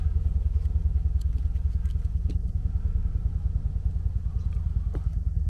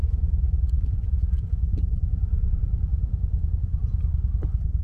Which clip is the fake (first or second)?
second